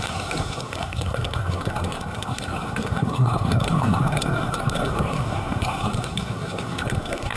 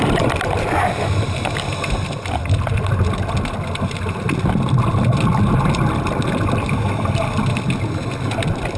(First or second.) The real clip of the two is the second